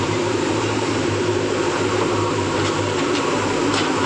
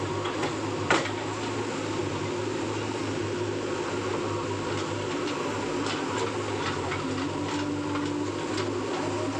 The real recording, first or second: second